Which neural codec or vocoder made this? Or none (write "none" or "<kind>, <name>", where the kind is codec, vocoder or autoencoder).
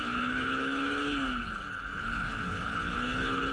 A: codec, HILCodec